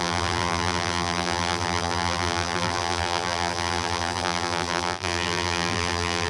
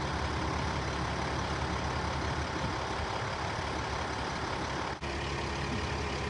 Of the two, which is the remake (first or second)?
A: first